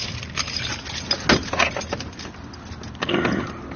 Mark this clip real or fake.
real